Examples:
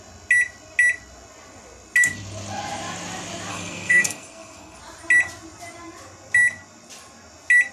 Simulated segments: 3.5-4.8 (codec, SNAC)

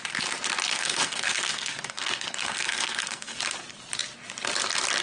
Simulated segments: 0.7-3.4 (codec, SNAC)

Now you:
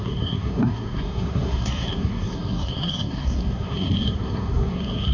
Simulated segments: 0.0-5.1 (codec, SNAC)

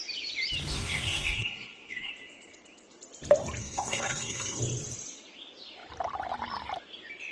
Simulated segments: 0.7-2.1 (codec, SNAC); 3.6-4.6